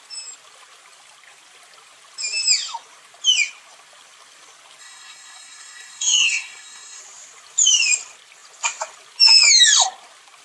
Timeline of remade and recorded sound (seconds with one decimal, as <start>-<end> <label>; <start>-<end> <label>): 0.0-4.8 recorded; 4.8-7.0 remade; 7.0-10.4 recorded